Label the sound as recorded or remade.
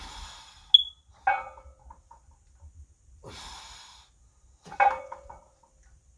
recorded